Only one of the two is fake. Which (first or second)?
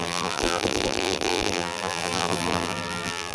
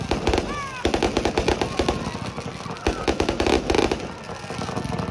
first